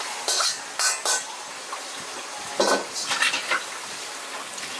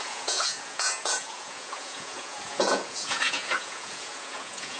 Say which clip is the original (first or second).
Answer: first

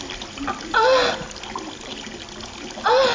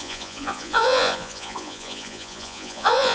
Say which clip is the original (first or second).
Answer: first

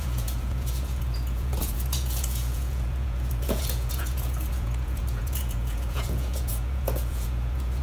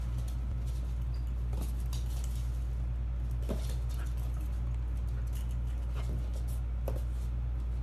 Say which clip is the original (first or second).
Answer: second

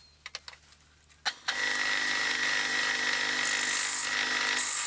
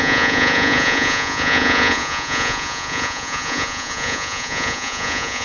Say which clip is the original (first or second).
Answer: first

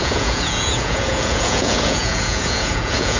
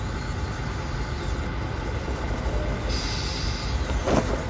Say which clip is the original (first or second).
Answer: second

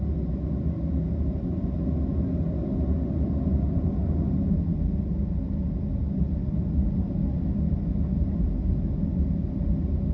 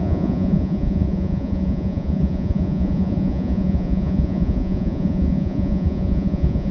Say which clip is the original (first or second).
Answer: first